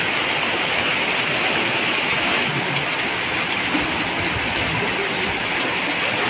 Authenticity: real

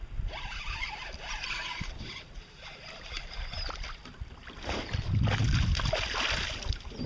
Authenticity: fake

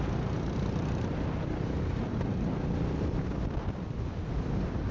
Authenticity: real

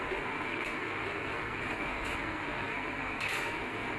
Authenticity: fake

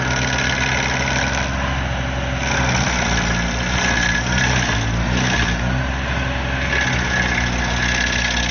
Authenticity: real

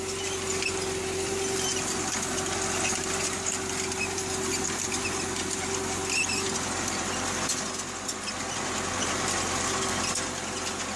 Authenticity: real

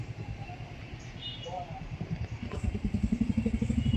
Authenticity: real